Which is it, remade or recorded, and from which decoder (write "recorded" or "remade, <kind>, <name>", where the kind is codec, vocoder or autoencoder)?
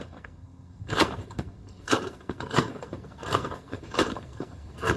remade, codec, SNAC